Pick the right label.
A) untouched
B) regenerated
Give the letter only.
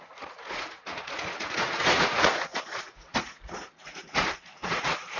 B